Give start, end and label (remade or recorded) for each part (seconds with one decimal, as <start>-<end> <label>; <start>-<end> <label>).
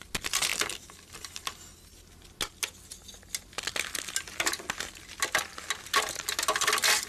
0.0-7.1 recorded